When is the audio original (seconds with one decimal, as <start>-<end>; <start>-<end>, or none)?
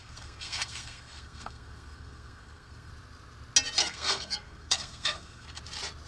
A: 2.9-3.8; 5.6-6.1